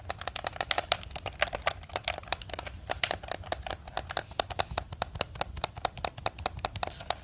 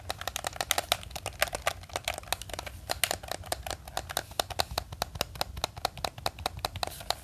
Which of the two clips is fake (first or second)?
first